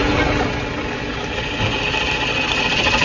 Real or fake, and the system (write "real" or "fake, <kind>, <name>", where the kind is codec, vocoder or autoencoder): real